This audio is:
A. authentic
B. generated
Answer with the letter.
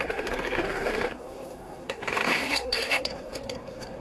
B